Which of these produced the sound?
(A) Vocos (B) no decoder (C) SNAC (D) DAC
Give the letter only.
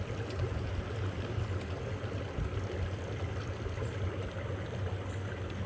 B